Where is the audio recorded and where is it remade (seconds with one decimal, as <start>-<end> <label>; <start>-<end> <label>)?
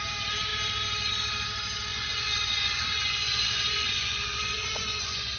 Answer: 0.0-1.9 recorded; 1.9-5.4 remade